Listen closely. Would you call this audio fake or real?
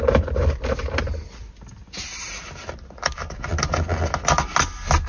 real